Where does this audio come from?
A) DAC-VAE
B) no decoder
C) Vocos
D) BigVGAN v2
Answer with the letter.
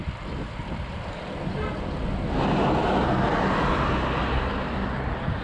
B